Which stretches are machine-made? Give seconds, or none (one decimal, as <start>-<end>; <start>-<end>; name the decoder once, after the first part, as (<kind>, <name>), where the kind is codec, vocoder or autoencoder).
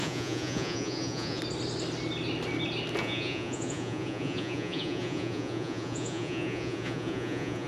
0.0-1.4 (vocoder, Vocos); 3.0-7.7